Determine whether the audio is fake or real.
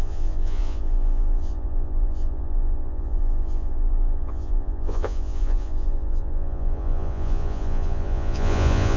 fake